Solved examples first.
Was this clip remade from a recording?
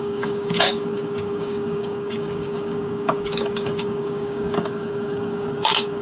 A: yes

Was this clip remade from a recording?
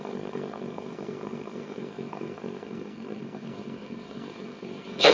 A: yes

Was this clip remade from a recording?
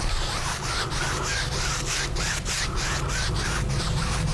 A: no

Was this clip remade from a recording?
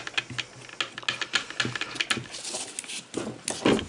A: no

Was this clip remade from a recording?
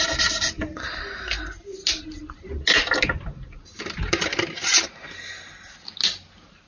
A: no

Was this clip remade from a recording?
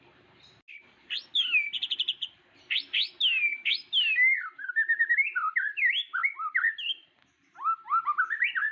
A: no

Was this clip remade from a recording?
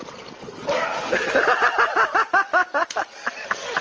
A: no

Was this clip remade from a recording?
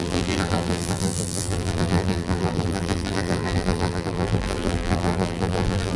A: yes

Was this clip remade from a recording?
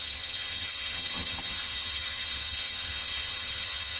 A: yes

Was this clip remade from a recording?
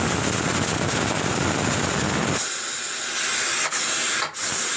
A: no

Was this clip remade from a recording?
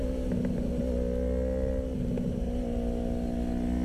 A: no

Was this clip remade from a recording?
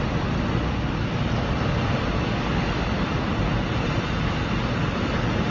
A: no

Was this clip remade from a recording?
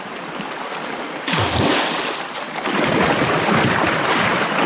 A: no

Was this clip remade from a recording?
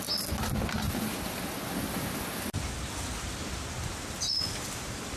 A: no